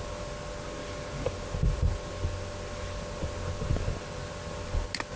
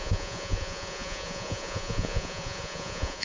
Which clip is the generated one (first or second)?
second